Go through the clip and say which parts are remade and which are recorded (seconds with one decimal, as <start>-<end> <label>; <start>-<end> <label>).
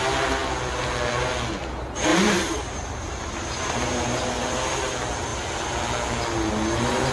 0.0-2.1 recorded; 2.1-4.3 remade; 4.3-7.1 recorded